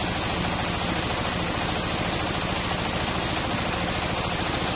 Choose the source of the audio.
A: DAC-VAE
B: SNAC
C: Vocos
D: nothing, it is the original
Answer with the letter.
D